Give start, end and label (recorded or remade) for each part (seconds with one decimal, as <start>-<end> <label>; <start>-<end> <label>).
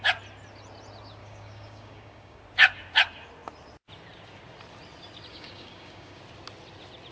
0.0-1.2 recorded; 1.2-2.4 remade; 2.4-5.3 recorded; 5.3-6.2 remade; 6.2-7.1 recorded